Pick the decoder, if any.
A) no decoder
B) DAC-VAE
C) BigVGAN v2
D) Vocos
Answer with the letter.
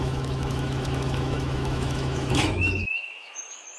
B